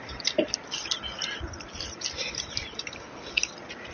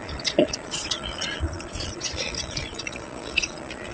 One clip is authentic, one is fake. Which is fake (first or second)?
second